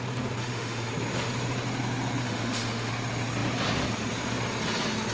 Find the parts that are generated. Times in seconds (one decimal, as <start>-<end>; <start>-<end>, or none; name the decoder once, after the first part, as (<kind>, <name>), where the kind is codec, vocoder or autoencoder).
0.4-0.9 (autoencoder, DAC-VAE); 2.2-2.9